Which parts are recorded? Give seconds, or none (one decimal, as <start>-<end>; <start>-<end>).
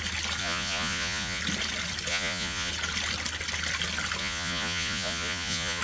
0.0-0.4; 1.4-2.1; 2.7-4.2